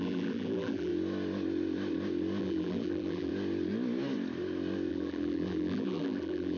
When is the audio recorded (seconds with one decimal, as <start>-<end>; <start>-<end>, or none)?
0.9-2.4; 3.3-4.9